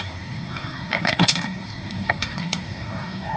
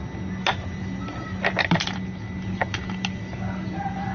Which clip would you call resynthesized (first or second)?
first